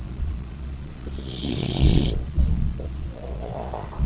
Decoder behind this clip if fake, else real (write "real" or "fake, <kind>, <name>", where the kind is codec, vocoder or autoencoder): fake, vocoder, Vocos